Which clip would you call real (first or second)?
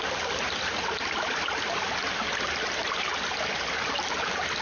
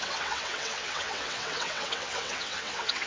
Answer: first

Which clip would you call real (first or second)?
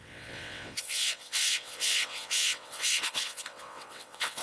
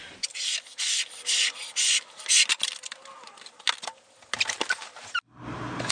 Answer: second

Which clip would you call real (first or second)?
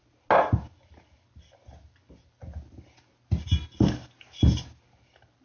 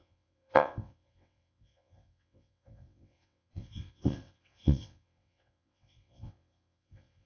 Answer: first